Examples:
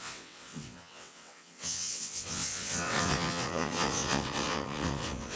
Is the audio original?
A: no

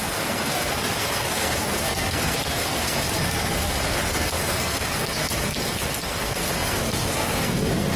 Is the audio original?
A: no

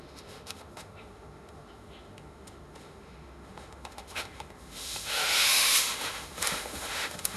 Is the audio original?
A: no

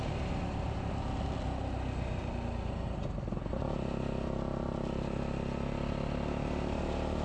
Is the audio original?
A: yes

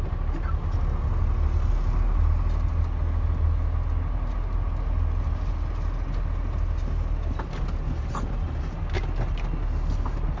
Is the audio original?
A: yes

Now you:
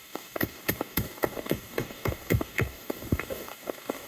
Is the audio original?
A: no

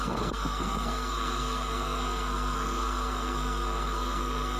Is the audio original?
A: no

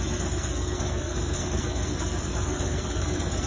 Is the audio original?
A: no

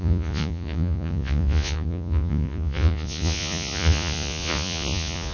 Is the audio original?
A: no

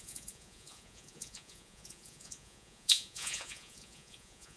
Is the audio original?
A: no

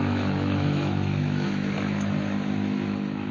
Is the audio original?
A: no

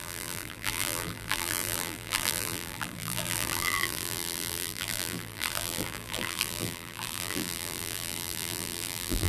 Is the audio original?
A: no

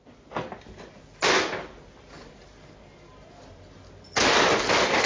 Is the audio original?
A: yes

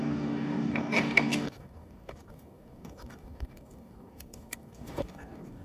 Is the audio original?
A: no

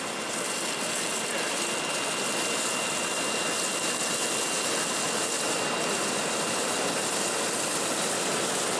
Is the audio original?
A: yes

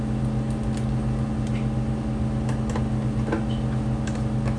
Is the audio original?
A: yes